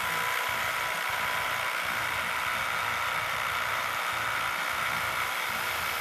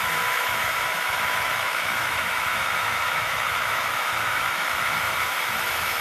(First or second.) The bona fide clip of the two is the first